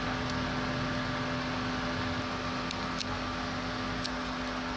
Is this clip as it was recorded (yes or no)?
yes